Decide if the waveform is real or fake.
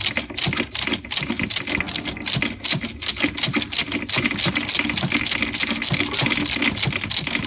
real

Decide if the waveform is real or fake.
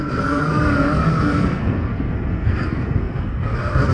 fake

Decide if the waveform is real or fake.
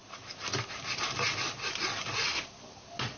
real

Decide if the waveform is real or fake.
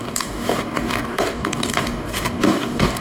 fake